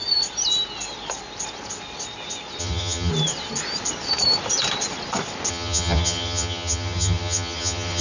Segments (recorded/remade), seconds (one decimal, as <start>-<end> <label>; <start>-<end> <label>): 0.0-2.6 recorded; 2.6-3.1 remade; 3.1-5.5 recorded; 5.5-8.0 remade

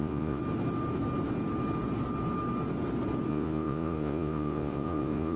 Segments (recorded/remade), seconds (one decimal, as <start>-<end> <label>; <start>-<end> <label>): 0.0-0.4 remade; 0.4-3.3 recorded; 3.3-5.4 remade

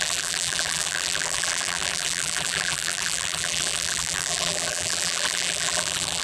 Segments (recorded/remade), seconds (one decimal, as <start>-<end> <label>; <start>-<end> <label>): 0.0-6.2 remade

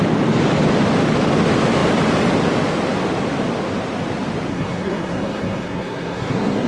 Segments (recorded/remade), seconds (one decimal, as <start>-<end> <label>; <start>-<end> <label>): 0.0-4.5 recorded; 4.5-6.7 remade